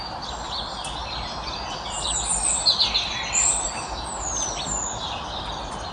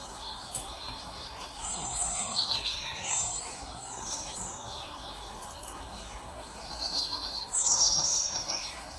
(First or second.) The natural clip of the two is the first